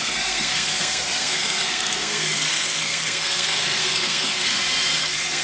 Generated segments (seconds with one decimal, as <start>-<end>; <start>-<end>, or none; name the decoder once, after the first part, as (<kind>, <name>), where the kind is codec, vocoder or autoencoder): 0.0-4.5 (codec, SNAC); 5.0-5.4